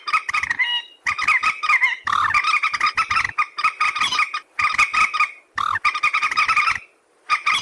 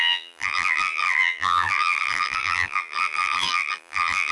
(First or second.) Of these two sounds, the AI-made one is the second